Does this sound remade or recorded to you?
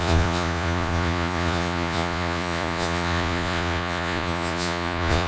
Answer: remade